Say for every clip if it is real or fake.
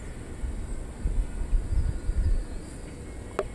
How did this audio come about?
real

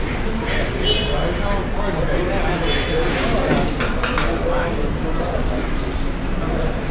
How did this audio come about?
real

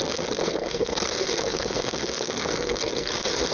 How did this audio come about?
fake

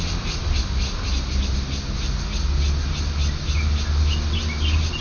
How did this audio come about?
real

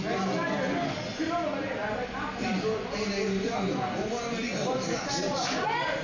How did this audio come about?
real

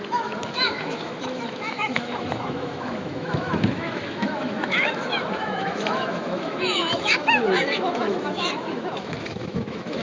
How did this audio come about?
fake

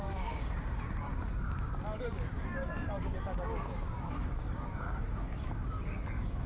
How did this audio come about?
fake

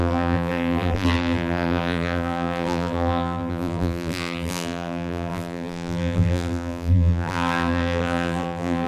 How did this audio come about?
fake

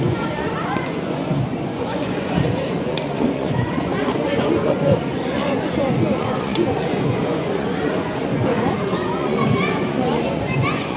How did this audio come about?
fake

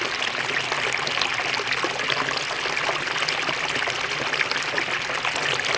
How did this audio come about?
real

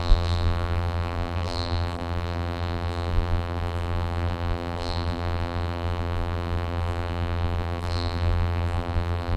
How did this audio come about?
fake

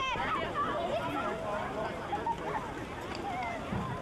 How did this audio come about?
real